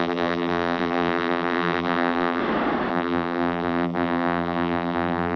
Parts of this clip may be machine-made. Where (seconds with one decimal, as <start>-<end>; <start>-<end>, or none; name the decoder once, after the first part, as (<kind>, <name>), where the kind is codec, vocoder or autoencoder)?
0.0-2.4 (vocoder, BigVGAN v2); 2.9-5.4